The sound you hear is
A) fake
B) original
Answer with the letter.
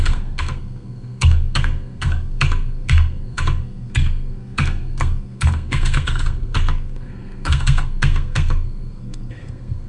A